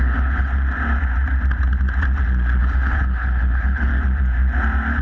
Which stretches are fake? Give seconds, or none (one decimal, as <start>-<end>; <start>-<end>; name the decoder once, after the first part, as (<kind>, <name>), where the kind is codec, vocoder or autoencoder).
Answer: 0.0-0.5 (codec, HILCodec); 2.6-3.9